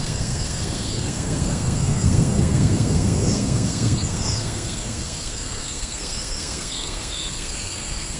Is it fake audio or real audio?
fake